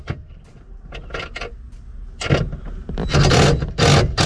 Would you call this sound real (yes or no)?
yes